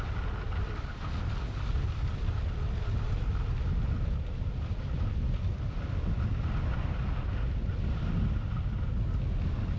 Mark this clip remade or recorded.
recorded